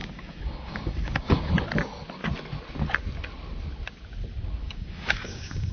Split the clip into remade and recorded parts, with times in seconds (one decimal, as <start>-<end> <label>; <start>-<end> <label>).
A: 0.0-1.5 remade; 1.5-4.6 recorded; 4.6-5.7 remade